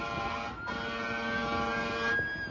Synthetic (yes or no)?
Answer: no